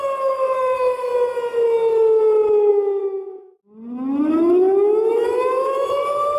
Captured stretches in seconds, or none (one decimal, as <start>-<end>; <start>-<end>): 1.1-2.7; 3.6-4.2